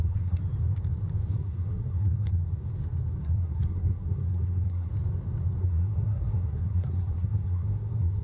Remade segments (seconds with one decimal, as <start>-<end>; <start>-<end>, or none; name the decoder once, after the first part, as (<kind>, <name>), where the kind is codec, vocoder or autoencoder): 0.0-0.4 (codec, SNAC); 1.3-2.4; 3.2-4.9; 5.6-8.2